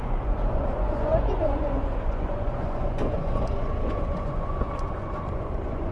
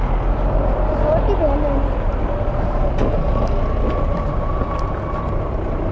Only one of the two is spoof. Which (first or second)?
first